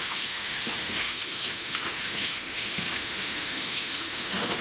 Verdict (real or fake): fake